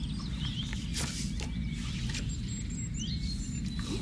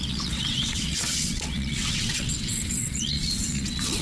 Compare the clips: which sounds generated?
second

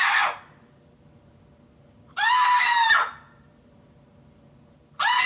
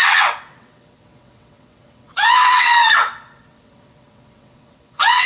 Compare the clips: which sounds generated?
second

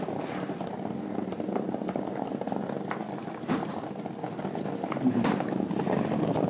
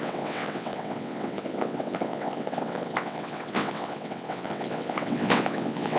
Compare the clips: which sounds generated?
second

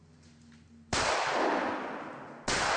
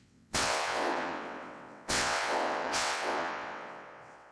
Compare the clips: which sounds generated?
second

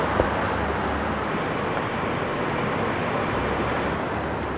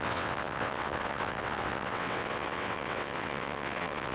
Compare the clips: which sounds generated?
second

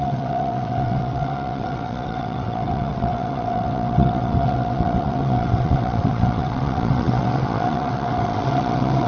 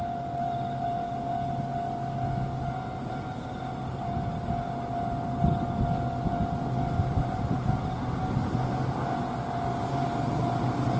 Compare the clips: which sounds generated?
first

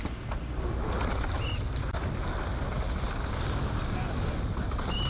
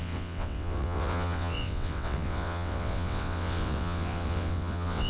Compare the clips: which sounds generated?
second